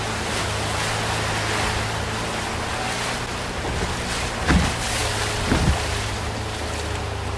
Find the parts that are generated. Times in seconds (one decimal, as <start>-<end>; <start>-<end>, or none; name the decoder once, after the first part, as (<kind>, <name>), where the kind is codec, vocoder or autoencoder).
none